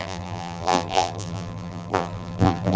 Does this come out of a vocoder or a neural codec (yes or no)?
yes